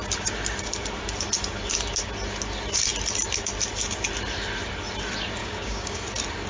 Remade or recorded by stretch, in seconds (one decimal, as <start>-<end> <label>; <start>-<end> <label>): 0.0-5.4 recorded; 5.4-6.0 remade; 6.0-6.5 recorded